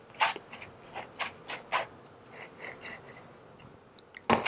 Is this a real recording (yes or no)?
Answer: yes